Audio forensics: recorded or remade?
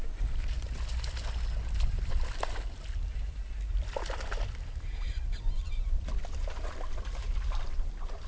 recorded